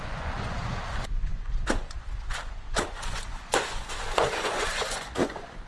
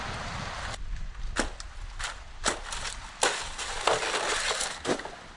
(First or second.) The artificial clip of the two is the first